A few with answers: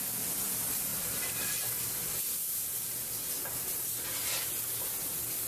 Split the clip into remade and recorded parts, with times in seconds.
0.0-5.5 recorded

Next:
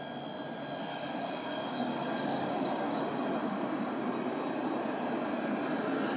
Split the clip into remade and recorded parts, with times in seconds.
0.0-0.9 recorded; 0.9-3.0 remade; 3.0-3.4 recorded; 3.4-4.0 remade; 4.0-6.2 recorded